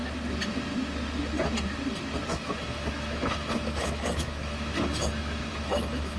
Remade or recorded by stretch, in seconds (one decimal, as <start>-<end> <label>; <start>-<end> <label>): 0.0-2.3 recorded; 2.3-6.2 remade